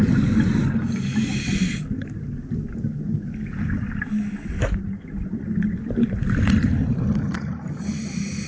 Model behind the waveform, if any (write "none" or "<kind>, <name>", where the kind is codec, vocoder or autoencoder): none